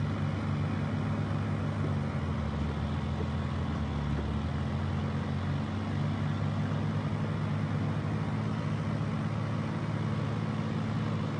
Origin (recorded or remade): recorded